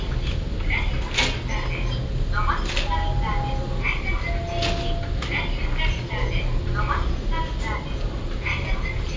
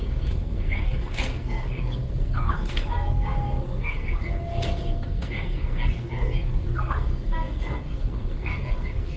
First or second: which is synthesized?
second